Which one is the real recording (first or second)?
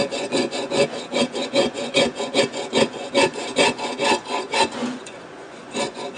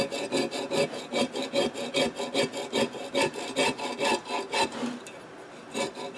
second